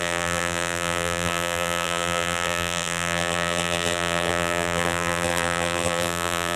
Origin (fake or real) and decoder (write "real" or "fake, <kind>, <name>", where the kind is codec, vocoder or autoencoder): fake, vocoder, BigVGAN v2